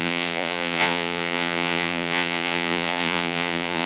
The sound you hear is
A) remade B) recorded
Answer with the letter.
A